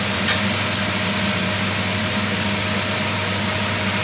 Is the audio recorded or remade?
recorded